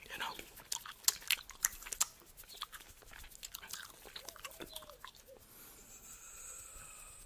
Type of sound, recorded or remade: recorded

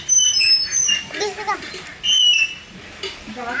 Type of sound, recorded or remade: recorded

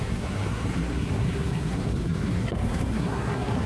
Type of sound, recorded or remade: remade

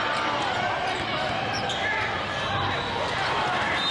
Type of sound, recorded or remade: recorded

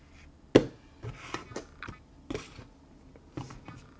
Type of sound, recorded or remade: recorded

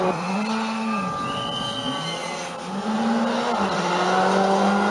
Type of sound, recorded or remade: recorded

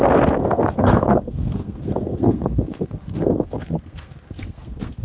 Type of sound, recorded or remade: remade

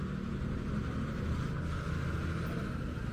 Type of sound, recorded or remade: recorded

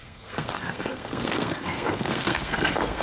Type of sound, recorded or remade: remade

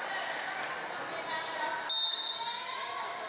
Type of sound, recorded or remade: recorded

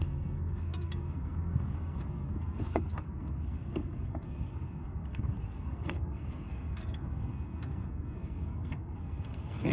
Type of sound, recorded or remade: remade